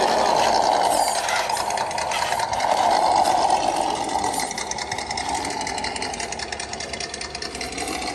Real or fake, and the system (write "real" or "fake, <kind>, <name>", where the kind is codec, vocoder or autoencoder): real